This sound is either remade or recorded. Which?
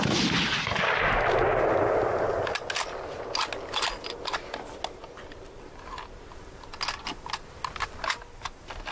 recorded